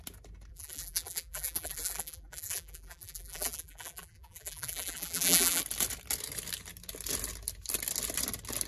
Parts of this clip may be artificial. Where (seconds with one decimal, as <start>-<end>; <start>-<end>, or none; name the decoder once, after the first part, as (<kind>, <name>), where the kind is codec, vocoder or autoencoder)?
0.5-5.6 (vocoder, BigVGAN v2)